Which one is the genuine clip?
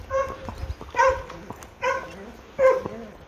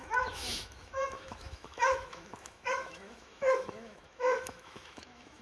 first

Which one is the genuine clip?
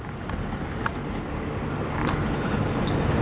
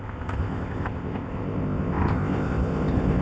first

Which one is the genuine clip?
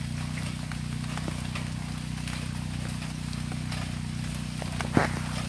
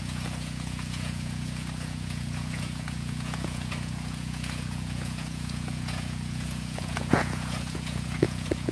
first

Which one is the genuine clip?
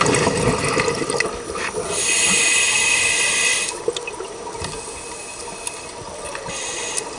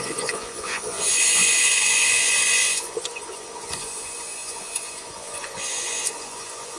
first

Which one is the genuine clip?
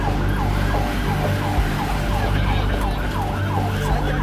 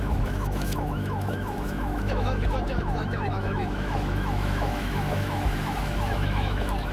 first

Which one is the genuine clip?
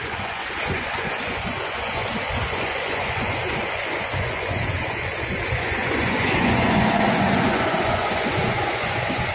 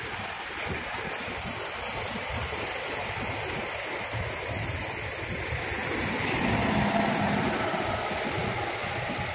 second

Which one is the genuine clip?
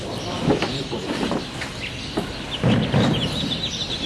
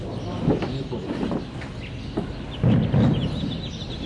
second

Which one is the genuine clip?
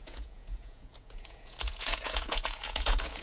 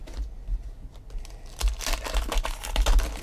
second